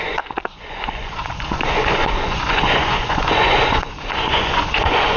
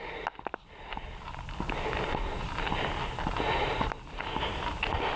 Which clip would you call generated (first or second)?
first